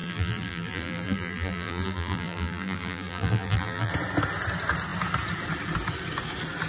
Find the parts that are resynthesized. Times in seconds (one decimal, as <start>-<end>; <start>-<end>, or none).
0.0-3.9